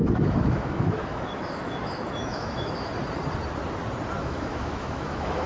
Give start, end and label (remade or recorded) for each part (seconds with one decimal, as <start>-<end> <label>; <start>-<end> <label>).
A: 0.0-2.9 remade; 2.9-4.2 recorded; 4.2-5.5 remade